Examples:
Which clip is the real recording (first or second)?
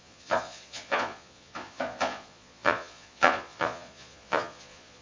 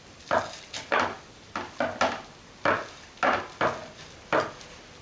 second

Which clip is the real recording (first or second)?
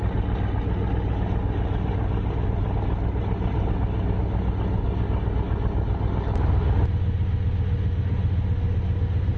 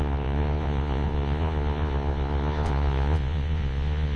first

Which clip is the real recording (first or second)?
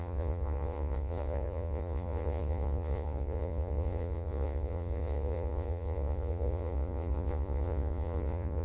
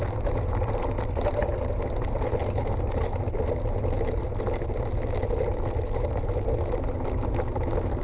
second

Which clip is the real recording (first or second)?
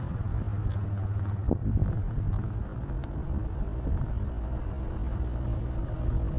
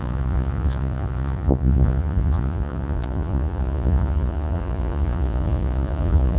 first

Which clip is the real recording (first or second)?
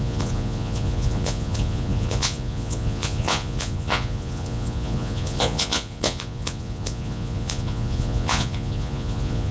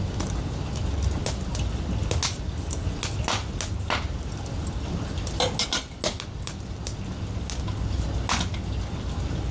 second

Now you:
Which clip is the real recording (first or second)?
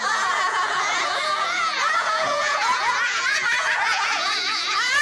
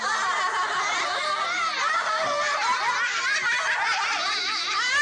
second